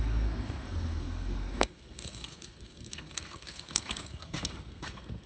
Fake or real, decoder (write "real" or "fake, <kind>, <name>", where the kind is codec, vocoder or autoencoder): fake, codec, SNAC